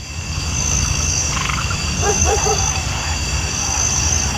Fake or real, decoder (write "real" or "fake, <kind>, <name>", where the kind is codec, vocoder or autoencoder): fake, codec, DAC